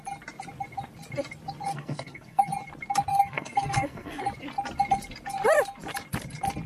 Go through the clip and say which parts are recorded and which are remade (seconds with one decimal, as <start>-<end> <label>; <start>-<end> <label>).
0.0-1.7 recorded; 1.7-2.5 remade; 2.5-3.1 recorded; 3.1-4.2 remade; 4.2-6.7 recorded